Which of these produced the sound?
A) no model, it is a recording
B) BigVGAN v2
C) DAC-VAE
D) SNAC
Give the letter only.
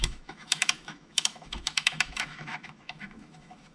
C